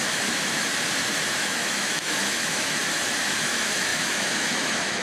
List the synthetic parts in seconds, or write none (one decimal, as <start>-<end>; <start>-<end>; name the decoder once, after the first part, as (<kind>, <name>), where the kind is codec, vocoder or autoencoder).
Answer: 0.0-0.7 (autoencoder, DAC-VAE); 1.3-2.8; 3.4-5.0